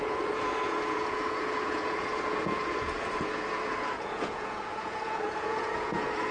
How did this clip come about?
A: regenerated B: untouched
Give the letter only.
A